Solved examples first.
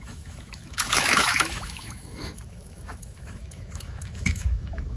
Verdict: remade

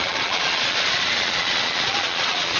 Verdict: remade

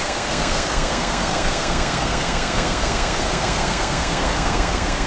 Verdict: remade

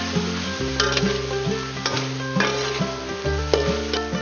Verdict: recorded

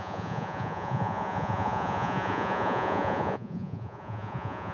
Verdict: remade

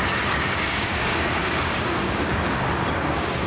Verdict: remade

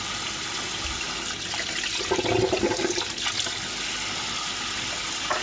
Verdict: recorded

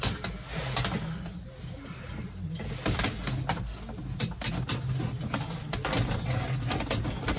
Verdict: recorded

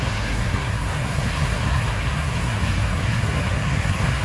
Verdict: remade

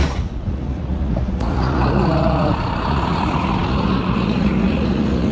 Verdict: remade